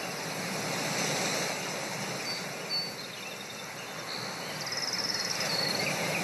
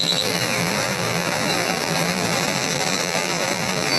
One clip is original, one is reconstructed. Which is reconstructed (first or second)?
second